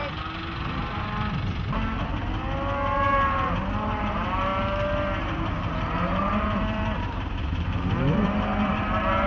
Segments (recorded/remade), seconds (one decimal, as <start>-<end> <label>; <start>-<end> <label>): 0.0-4.0 recorded; 4.0-4.5 remade; 4.5-5.2 recorded; 5.2-9.3 remade